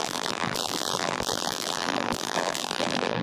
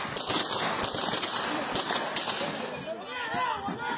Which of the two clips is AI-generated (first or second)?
first